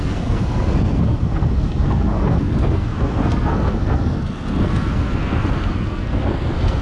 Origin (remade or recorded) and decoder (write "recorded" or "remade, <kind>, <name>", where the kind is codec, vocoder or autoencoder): remade, codec, SNAC